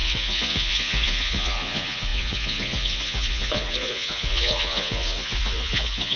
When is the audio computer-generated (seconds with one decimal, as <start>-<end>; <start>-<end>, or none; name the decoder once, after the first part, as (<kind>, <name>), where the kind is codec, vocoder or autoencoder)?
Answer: 0.0-6.2 (vocoder, Vocos)